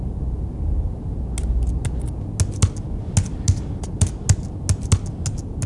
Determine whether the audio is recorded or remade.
recorded